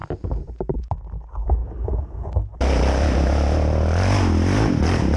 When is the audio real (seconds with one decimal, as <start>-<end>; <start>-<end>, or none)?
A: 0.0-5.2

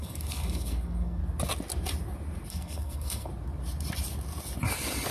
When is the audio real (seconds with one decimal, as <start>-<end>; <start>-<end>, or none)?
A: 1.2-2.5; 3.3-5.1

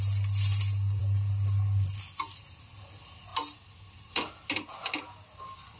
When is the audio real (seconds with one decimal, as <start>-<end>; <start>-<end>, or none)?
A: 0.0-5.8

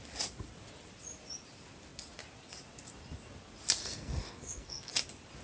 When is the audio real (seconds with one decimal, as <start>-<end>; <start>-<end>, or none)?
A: 0.0-3.8; 4.9-5.4

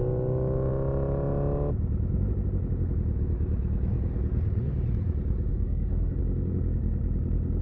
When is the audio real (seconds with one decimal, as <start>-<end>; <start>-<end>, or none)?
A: 0.0-5.5; 6.2-7.6